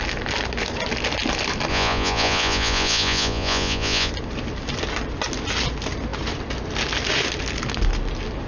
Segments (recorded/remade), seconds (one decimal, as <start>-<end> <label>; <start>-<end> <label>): 0.0-1.7 recorded; 1.7-4.1 remade; 4.1-8.5 recorded